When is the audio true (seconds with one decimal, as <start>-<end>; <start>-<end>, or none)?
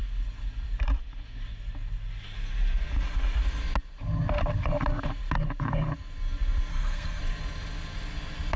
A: 0.0-6.7; 7.2-8.6